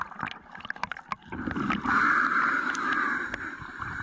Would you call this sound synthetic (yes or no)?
no